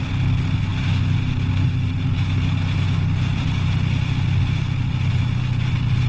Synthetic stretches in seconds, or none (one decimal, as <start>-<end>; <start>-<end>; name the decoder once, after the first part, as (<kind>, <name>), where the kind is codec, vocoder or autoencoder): none